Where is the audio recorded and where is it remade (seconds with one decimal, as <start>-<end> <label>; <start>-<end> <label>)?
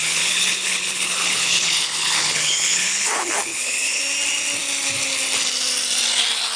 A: 0.0-4.0 remade; 4.0-6.6 recorded